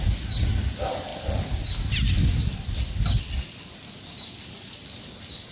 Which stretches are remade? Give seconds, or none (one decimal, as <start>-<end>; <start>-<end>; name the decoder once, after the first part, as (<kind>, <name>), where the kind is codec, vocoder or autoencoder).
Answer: none